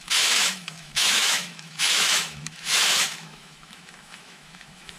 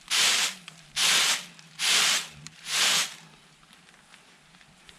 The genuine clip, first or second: second